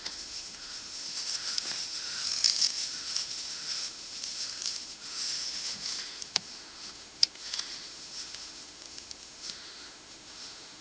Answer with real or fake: fake